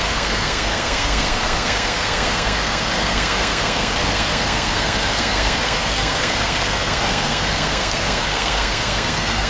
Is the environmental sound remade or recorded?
remade